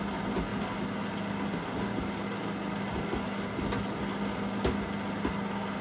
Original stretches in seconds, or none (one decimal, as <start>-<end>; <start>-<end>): 0.0-5.8